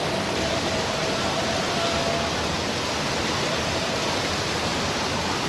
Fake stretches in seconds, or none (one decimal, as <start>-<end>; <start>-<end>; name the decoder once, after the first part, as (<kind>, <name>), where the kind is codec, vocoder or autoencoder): 0.0-1.0 (vocoder, BigVGAN v2); 3.2-5.5